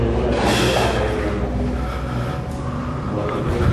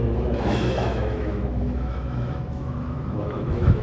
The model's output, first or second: second